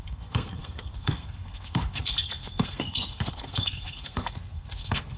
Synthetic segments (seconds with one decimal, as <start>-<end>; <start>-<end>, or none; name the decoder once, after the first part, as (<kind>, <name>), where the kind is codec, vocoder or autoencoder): 0.0-5.2 (codec, SNAC)